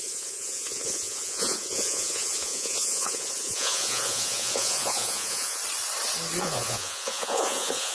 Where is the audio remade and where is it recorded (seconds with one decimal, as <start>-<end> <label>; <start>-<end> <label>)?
0.0-5.6 remade; 5.6-6.4 recorded; 6.4-7.9 remade